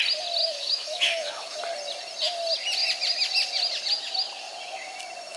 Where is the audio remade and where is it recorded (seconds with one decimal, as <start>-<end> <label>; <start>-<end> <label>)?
0.0-0.4 recorded; 0.4-1.6 remade; 1.6-5.4 recorded